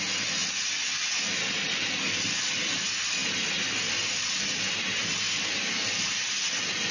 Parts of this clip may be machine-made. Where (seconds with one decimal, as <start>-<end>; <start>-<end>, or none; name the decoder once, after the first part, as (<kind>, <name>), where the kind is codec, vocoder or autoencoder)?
none